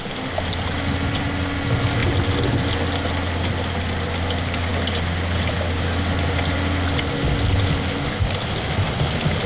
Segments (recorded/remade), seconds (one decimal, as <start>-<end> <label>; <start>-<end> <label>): 0.0-9.5 recorded